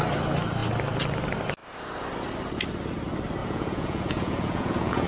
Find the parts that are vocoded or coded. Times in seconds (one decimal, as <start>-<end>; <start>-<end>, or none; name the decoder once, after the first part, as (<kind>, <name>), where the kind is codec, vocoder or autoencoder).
3.4-5.1 (vocoder, Vocos)